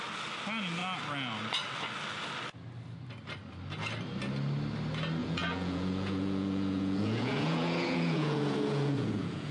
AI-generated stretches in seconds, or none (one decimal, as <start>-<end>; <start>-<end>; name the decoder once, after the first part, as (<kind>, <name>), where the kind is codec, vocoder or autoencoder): 5.2-9.5 (vocoder, Vocos)